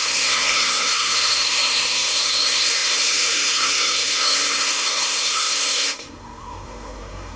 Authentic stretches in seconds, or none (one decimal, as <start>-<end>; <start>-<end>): none

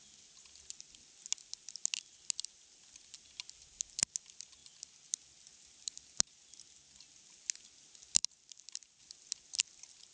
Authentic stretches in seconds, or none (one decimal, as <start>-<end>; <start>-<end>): 0.0-10.1

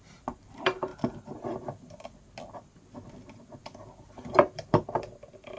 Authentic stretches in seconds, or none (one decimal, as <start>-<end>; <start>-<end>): 0.9-4.3

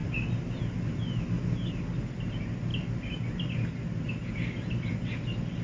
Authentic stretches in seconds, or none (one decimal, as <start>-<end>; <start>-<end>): 0.0-5.6

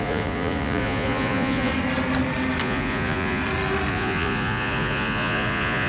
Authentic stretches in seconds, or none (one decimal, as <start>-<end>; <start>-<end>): 1.7-2.6; 3.4-3.9

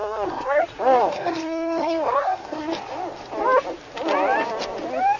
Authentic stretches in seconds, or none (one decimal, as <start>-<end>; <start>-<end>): 0.6-1.0; 2.7-5.2

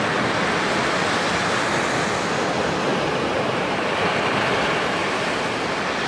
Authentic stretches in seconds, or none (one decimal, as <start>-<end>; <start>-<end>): 0.0-2.9; 4.4-6.1

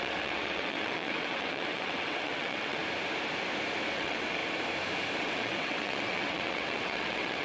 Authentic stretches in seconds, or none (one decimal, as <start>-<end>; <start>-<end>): 2.8-3.9; 4.4-5.2